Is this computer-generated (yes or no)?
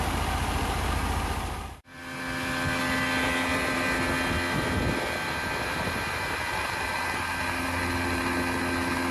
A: no